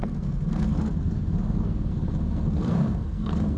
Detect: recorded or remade remade